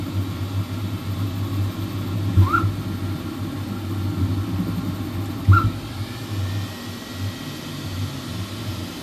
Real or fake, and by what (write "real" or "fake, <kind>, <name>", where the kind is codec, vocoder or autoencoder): real